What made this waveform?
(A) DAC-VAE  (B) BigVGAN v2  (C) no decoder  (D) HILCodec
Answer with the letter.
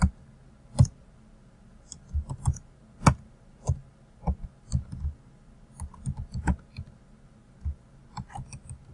C